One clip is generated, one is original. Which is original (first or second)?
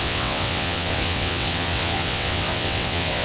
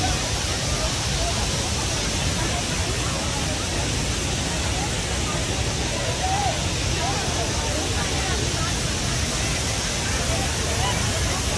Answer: second